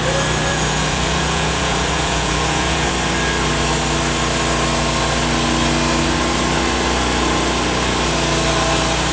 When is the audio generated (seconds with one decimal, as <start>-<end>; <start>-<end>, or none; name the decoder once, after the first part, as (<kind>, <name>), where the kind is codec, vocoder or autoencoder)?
0.5-2.9 (vocoder, Vocos)